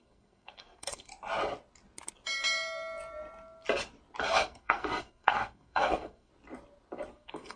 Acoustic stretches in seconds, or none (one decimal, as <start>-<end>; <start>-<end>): 1.1-4.2; 6.3-7.1